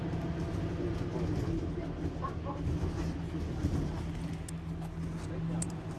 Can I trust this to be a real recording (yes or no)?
yes